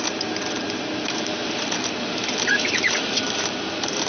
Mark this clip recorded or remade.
remade